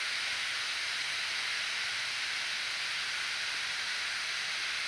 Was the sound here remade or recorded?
recorded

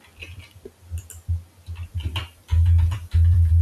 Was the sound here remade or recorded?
recorded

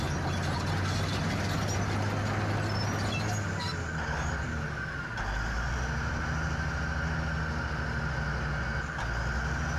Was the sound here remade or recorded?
recorded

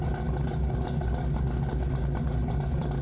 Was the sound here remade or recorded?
recorded